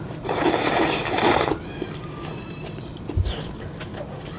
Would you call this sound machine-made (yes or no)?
yes